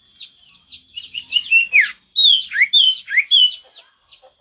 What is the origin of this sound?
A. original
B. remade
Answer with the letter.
A